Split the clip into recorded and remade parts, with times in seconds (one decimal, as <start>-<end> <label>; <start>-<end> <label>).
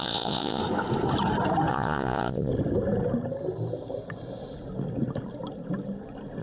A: 0.0-0.6 remade; 0.6-1.7 recorded; 1.7-2.5 remade; 2.5-6.4 recorded